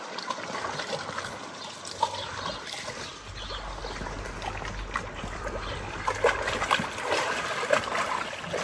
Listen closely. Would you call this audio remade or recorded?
recorded